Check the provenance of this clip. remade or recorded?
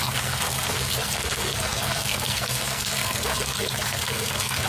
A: remade